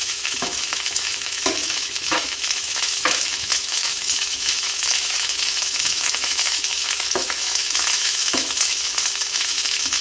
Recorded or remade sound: remade